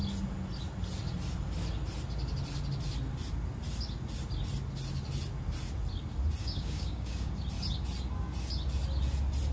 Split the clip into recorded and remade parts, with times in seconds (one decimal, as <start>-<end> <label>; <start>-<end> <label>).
0.0-6.4 recorded; 6.4-7.3 remade; 7.3-9.5 recorded